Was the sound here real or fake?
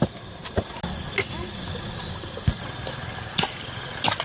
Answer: real